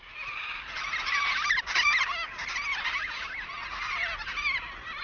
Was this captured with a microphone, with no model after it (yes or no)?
yes